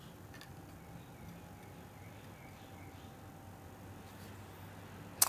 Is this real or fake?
real